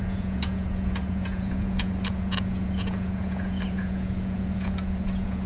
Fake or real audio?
fake